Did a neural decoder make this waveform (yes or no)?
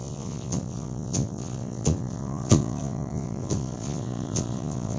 yes